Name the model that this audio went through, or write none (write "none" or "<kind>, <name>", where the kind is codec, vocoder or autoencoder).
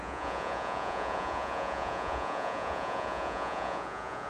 vocoder, Vocos